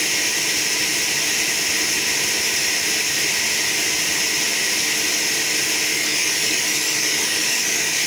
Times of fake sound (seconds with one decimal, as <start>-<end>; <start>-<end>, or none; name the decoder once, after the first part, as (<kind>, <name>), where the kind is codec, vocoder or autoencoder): 5.9-8.1 (codec, DAC)